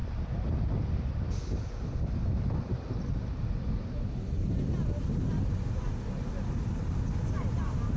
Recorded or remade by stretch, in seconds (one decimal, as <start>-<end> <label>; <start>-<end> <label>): 0.0-8.0 recorded